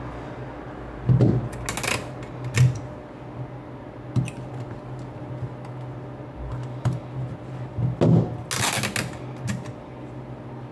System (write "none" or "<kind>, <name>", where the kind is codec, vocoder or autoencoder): none